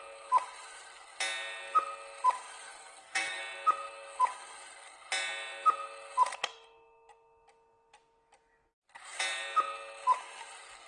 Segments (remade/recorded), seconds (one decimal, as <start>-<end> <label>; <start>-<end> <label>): 0.0-2.7 recorded; 2.7-3.4 remade; 3.4-10.9 recorded